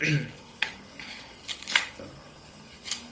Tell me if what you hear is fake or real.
fake